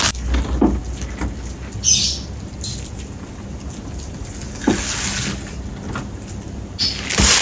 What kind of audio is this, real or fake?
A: real